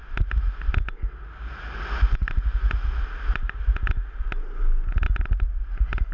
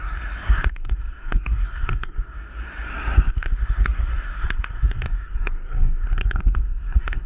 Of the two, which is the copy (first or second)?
second